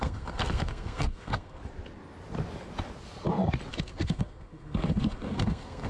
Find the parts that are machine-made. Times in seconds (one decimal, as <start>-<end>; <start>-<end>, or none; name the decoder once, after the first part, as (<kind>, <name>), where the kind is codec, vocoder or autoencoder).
0.0-1.6 (codec, SNAC); 3.7-5.9